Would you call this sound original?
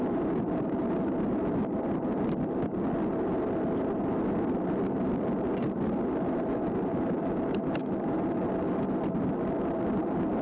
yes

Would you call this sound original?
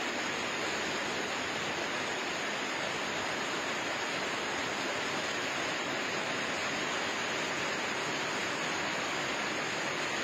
yes